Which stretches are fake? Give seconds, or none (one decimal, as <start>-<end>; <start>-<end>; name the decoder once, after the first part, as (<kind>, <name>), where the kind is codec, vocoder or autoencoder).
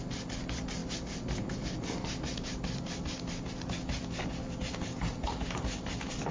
none